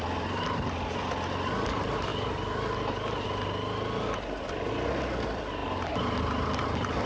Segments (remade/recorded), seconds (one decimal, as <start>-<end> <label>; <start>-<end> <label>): 0.0-7.1 recorded